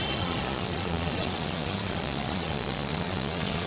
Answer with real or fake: fake